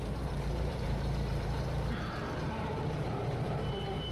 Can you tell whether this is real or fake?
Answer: fake